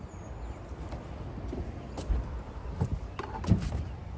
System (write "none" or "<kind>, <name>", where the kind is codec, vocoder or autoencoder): none